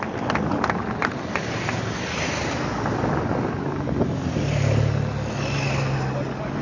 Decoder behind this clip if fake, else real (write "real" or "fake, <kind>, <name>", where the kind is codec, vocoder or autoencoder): real